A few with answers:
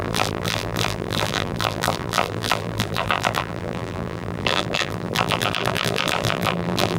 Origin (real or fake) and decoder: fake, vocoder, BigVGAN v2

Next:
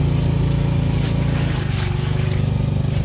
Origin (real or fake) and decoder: real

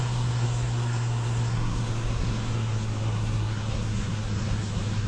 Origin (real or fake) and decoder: fake, codec, SNAC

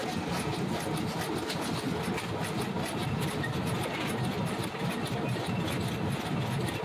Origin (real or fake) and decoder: real